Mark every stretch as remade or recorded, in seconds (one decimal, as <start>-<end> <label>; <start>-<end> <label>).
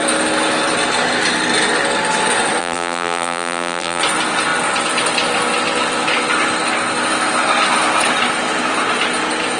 0.0-2.6 recorded; 2.6-4.0 remade; 4.0-9.6 recorded